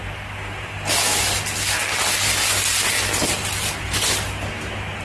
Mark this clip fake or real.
real